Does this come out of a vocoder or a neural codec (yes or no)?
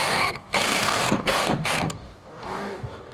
yes